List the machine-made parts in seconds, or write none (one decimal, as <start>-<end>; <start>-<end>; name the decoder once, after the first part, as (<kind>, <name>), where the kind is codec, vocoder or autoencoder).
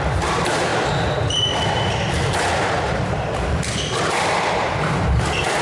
0.0-0.7 (vocoder, BigVGAN v2); 4.1-5.6